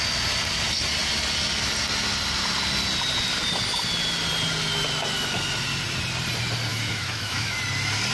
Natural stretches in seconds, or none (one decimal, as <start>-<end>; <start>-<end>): 0.0-6.7; 7.6-8.1